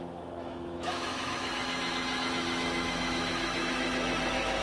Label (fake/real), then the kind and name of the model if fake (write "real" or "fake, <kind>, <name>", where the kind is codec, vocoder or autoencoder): fake, autoencoder, DAC-VAE